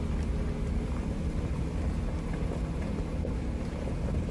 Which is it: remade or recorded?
recorded